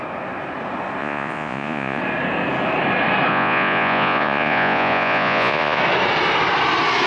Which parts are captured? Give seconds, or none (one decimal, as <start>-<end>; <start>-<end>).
0.0-1.0; 2.0-3.3; 5.8-7.1